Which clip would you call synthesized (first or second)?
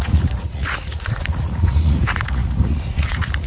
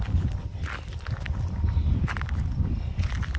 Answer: first